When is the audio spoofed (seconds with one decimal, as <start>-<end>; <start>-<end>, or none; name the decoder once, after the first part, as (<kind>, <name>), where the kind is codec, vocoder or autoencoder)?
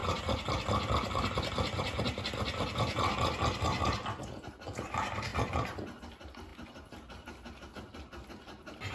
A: none